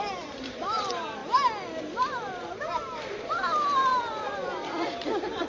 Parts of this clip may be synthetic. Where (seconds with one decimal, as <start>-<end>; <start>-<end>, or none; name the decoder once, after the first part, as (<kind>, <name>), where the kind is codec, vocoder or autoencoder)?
0.0-1.2 (vocoder, BigVGAN v2); 1.8-5.5